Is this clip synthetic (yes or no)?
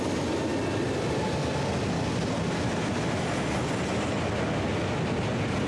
no